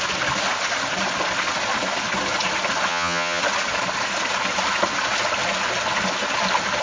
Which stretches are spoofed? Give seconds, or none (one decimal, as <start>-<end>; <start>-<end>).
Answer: 2.9-3.4